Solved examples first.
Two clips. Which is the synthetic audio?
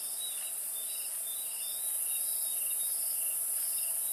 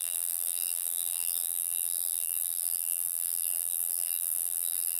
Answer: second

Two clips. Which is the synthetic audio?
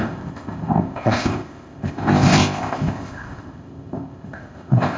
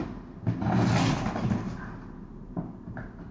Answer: first